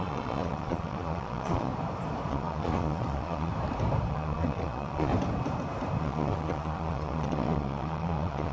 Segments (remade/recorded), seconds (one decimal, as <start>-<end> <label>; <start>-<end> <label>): 0.0-1.7 remade; 1.7-2.3 recorded; 2.3-3.5 remade; 3.5-4.1 recorded; 4.1-5.1 remade; 5.1-6.0 recorded; 6.0-8.5 remade